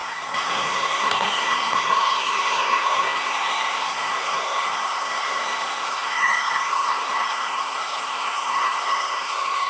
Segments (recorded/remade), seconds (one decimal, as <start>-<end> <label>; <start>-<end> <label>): 0.0-9.7 remade